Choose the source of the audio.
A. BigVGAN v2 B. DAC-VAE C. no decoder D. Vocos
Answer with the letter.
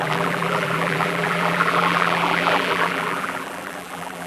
A